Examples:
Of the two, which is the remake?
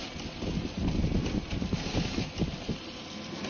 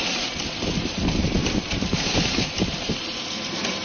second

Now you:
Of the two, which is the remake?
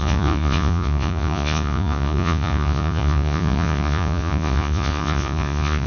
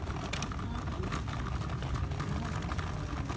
first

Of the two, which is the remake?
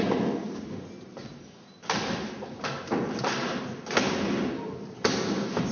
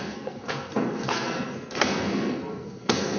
second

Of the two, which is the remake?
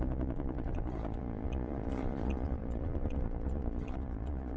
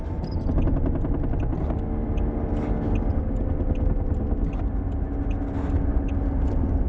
first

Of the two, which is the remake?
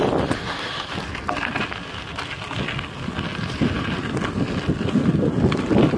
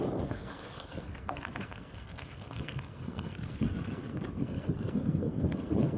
second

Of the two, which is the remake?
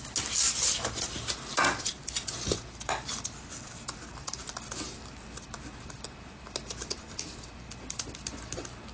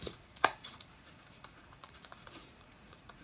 second